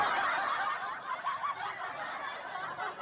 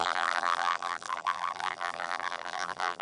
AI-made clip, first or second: second